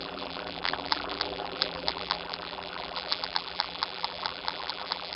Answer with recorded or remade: remade